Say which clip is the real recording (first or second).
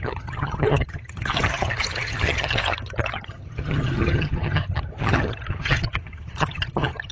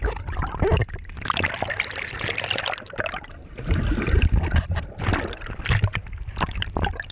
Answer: second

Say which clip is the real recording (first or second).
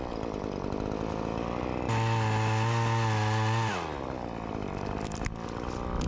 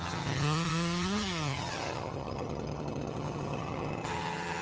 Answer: first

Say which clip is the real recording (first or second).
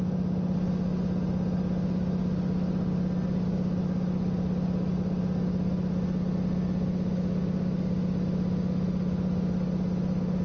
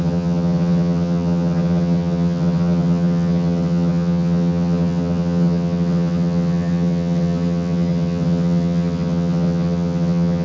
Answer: first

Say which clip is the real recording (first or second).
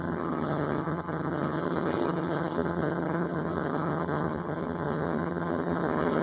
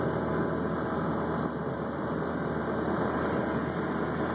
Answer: second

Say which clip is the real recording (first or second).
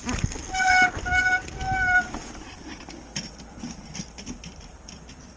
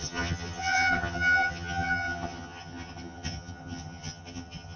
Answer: first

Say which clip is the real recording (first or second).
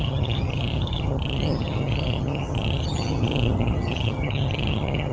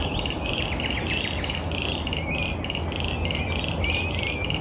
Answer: second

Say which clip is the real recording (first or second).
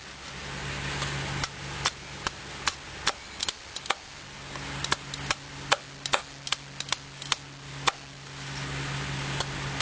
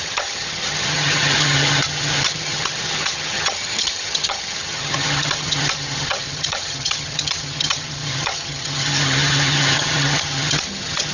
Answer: first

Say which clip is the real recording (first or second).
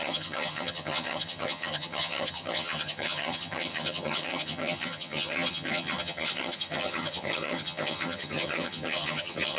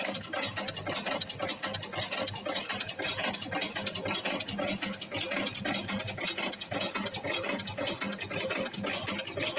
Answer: second